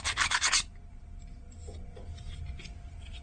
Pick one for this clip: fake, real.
real